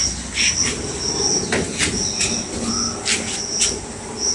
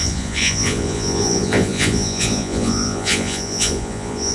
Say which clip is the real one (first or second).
first